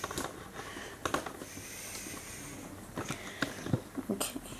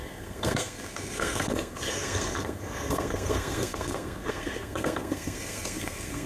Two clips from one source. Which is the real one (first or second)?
first